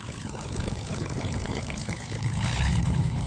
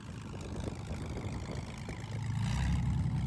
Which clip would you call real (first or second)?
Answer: second